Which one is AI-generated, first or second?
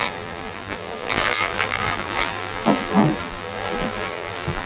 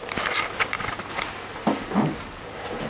first